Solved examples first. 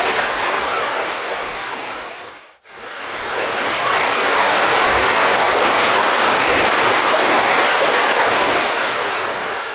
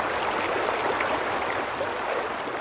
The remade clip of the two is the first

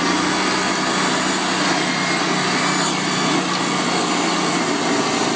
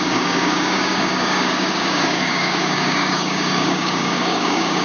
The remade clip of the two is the second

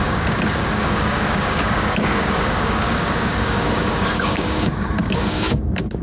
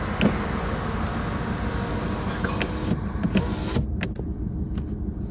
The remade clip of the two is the first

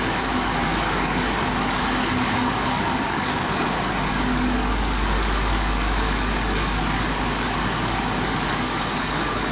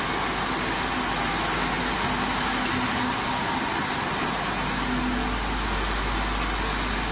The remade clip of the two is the first